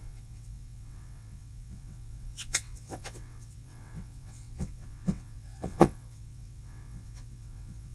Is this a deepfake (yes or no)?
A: yes